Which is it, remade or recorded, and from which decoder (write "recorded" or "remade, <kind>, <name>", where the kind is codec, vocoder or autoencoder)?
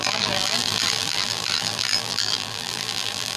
remade, vocoder, BigVGAN v2